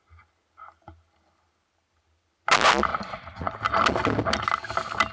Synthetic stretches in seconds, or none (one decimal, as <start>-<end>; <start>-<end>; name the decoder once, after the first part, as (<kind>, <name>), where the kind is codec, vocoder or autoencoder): 2.9-3.5 (vocoder, Vocos)